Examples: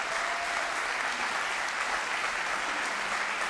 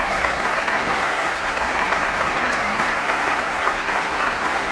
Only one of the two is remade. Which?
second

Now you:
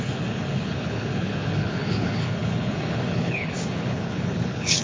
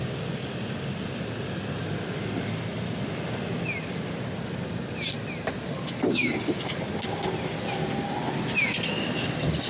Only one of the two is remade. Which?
first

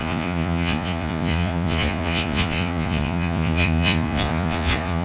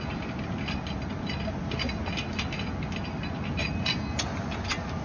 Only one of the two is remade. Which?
first